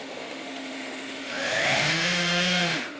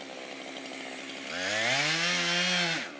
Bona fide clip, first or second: second